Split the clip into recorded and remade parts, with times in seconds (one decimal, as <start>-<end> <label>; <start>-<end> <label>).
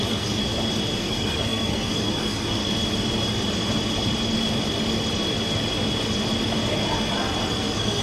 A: 0.0-0.4 remade; 0.4-1.0 recorded; 1.0-2.6 remade; 2.6-7.4 recorded; 7.4-8.0 remade